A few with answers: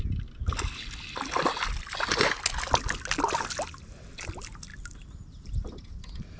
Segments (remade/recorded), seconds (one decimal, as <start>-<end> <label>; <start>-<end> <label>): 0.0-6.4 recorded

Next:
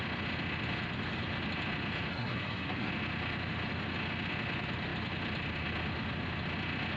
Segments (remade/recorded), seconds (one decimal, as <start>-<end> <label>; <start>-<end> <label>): 0.0-2.1 recorded; 2.1-2.9 remade; 2.9-7.0 recorded

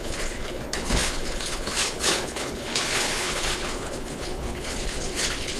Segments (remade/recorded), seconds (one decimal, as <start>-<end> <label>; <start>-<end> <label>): 0.0-5.6 remade

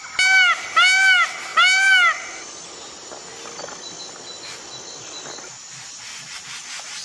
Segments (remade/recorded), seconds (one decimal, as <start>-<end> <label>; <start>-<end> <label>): 0.0-7.0 recorded

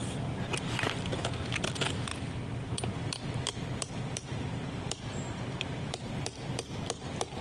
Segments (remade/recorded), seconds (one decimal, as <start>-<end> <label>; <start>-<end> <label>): 0.0-3.5 recorded; 3.5-6.1 remade; 6.1-7.4 recorded

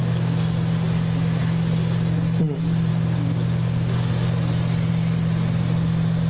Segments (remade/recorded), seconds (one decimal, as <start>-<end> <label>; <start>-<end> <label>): 0.0-6.3 recorded

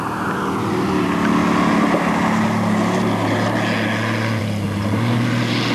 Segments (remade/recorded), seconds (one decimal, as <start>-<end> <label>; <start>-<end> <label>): 0.0-5.7 recorded